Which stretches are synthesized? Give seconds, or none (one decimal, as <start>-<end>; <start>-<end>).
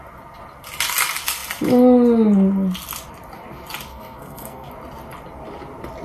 3.9-4.7